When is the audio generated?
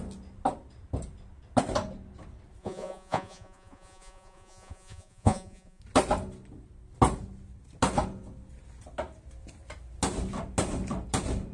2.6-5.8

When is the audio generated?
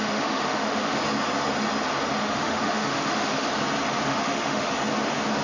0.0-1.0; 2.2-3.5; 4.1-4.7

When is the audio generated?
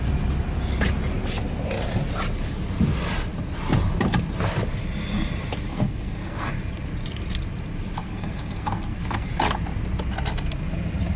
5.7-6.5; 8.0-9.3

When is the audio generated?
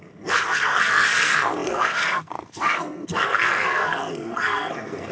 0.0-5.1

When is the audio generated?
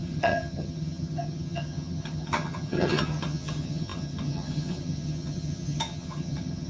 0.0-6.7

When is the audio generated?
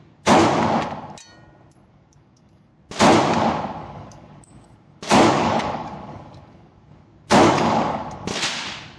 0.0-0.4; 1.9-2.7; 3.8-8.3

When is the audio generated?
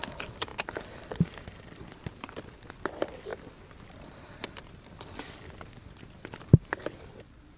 none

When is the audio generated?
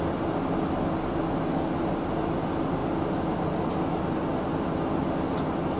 none